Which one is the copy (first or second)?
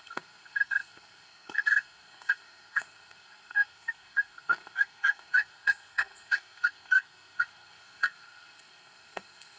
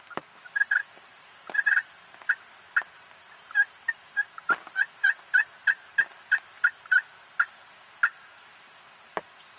first